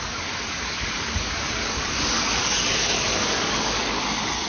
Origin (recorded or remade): remade